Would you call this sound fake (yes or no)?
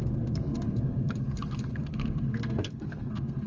yes